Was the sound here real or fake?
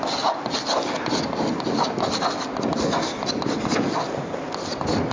real